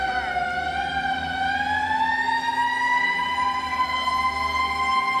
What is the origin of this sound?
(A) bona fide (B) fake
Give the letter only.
A